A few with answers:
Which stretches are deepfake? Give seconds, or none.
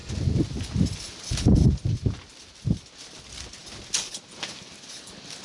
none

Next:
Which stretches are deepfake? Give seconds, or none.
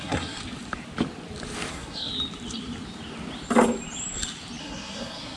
0.0-0.4 (codec, SNAC); 1.7-2.1; 4.6-5.4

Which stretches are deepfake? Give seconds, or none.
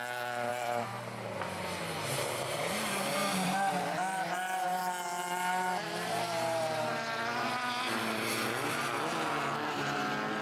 0.5-4.8 (vocoder, BigVGAN v2); 5.8-6.9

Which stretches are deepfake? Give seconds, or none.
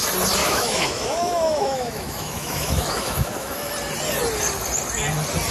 0.4-3.7 (autoencoder, DAC-VAE)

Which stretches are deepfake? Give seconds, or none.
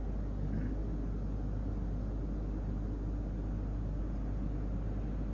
none